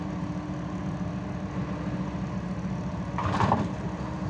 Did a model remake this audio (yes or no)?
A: no